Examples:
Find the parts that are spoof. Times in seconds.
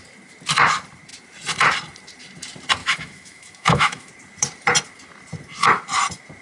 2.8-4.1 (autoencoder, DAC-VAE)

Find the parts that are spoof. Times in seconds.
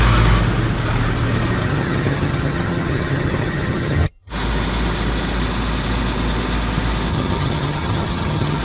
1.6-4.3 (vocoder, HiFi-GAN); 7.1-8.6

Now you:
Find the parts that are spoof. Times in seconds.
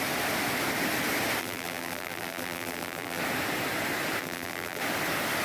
1.4-3.2 (vocoder, BigVGAN v2); 4.2-4.8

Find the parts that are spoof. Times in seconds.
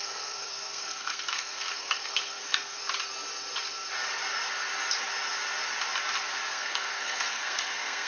0.0-2.8 (codec, SNAC); 6.5-8.1